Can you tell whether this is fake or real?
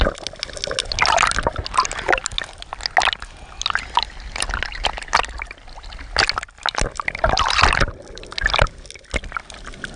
real